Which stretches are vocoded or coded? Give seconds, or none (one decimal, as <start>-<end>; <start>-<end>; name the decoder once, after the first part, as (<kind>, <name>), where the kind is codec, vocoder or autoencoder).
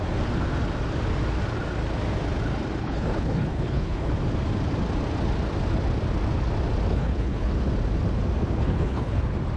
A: 2.8-4.1 (codec, HILCodec); 6.9-7.5; 8.6-9.2